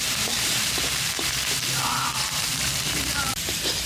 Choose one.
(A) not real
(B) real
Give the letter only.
A